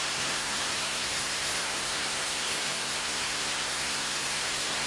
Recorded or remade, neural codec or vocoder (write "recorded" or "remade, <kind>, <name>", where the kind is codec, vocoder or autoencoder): remade, codec, SNAC